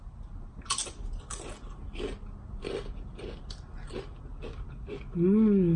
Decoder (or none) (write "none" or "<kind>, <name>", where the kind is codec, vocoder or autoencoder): none